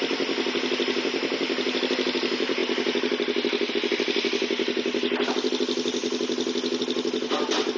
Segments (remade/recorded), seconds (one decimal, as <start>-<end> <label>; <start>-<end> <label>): 0.0-7.8 recorded